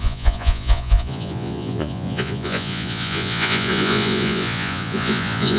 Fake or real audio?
fake